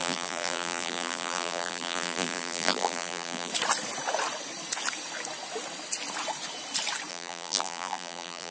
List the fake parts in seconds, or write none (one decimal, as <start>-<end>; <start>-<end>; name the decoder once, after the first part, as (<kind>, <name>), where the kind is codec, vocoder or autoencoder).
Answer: 0.0-3.5 (vocoder, BigVGAN v2); 7.1-8.5